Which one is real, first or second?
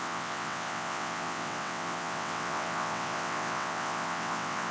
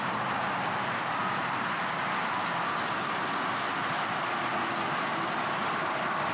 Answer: second